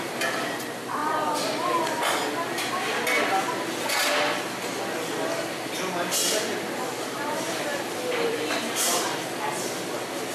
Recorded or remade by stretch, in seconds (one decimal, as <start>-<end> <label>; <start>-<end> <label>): 0.0-7.7 recorded; 7.7-8.5 remade; 8.5-8.9 recorded; 8.9-9.5 remade; 9.5-10.3 recorded